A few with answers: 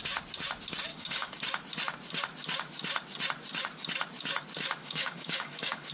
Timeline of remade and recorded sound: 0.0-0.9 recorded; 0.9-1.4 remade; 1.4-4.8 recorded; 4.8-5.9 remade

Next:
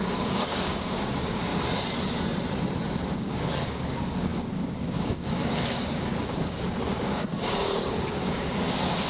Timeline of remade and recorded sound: 0.0-1.5 remade; 1.5-3.1 recorded; 3.1-9.1 remade

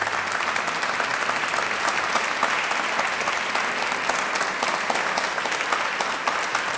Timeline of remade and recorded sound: 0.0-6.8 recorded

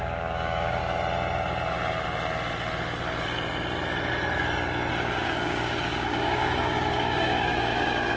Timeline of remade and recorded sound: 0.0-0.8 remade; 0.8-4.9 recorded; 4.9-8.2 remade

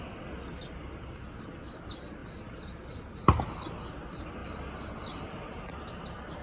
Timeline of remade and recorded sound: 0.0-6.4 recorded